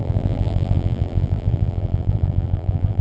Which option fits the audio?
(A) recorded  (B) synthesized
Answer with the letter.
B